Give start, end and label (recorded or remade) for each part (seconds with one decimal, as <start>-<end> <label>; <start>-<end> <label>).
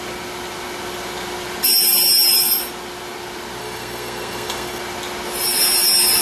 0.0-3.6 recorded; 3.6-4.8 remade; 4.8-6.2 recorded